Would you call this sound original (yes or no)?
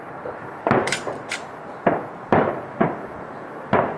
yes